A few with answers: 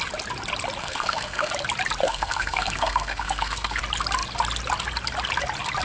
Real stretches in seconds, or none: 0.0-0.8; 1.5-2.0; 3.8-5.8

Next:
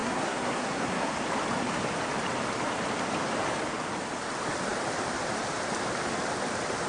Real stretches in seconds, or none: 1.1-6.9

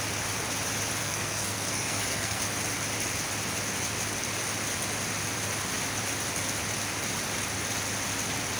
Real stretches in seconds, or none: 0.0-1.0; 2.4-8.6

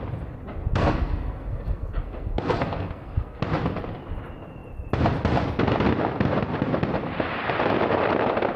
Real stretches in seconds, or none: 0.0-0.7; 3.4-8.6

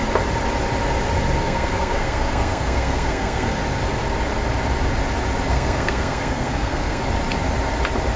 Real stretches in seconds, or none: 0.0-1.4; 3.6-5.5; 7.0-8.2